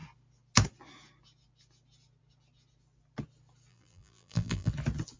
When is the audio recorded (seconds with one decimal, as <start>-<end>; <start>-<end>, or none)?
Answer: 0.0-3.7; 4.7-5.2